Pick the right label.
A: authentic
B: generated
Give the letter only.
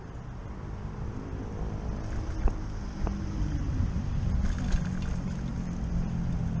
A